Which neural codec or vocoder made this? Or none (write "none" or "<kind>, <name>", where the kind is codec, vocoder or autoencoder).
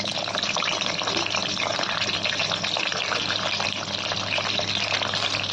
none